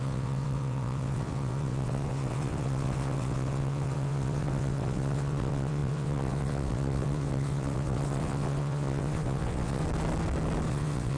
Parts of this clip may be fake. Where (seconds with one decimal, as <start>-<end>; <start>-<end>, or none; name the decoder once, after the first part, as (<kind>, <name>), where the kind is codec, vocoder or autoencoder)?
0.0-9.8 (vocoder, WaveNeXt); 10.7-11.2